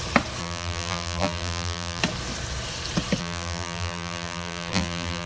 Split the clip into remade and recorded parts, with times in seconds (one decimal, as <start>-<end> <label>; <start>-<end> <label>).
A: 0.0-0.4 recorded; 0.4-2.0 remade; 2.0-3.2 recorded; 3.2-5.3 remade